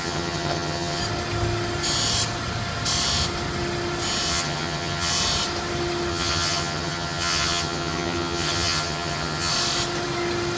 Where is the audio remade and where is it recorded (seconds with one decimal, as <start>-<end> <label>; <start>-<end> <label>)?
0.0-1.0 remade; 1.0-4.3 recorded; 4.3-5.1 remade; 5.1-6.1 recorded; 6.1-9.5 remade; 9.5-10.6 recorded